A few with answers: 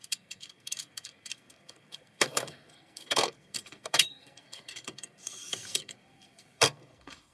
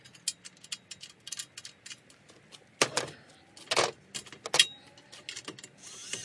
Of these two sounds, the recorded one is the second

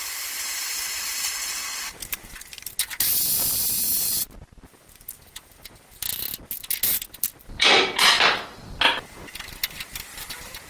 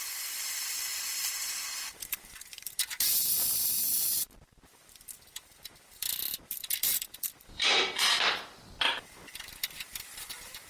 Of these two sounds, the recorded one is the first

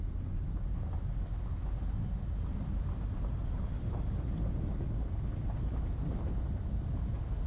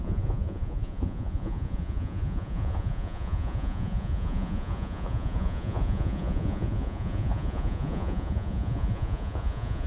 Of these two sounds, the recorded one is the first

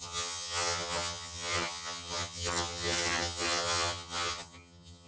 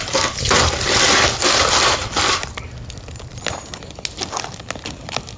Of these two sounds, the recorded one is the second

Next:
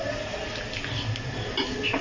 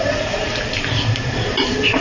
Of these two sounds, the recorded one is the first